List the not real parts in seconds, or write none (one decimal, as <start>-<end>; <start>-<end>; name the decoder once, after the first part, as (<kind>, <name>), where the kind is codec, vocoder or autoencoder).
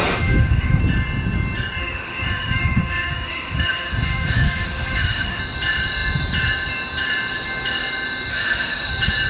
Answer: 0.0-0.8 (autoencoder, DAC-VAE); 1.8-5.4; 8.3-8.9